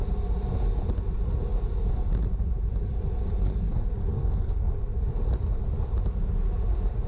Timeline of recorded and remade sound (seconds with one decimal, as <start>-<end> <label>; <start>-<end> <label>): 0.0-4.1 recorded; 4.1-4.7 remade; 4.7-7.1 recorded